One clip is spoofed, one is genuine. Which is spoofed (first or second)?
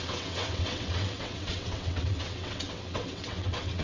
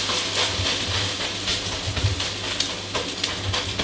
first